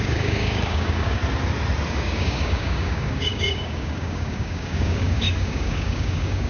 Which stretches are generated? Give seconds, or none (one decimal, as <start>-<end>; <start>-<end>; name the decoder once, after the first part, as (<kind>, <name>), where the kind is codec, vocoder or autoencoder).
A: 0.0-1.2 (codec, DAC); 1.9-6.5